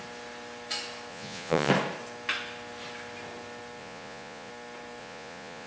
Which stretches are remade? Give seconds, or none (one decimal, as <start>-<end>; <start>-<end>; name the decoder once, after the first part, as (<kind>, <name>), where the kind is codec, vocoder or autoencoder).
1.1-1.7 (vocoder, Vocos); 3.8-4.5; 5.0-5.7